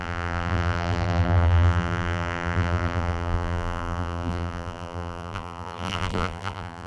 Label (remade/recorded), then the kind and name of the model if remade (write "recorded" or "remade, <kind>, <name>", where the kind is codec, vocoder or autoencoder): remade, vocoder, BigVGAN v2